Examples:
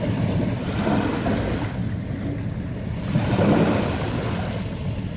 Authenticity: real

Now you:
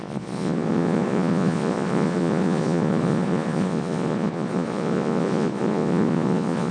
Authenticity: fake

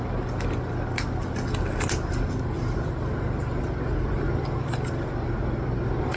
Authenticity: real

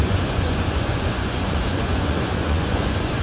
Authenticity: fake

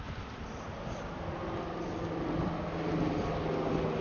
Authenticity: real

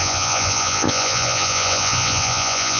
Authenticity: fake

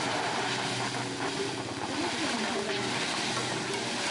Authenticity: real